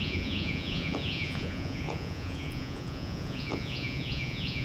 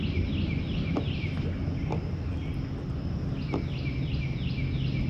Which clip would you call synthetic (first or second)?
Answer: first